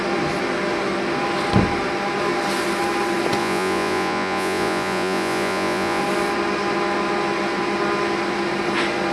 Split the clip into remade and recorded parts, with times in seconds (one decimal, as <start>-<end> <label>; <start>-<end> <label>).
0.0-3.4 recorded; 3.4-6.0 remade; 6.0-9.1 recorded